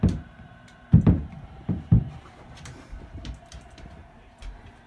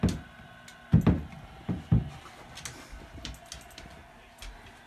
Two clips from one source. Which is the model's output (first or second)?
first